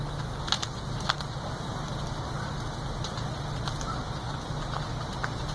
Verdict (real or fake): real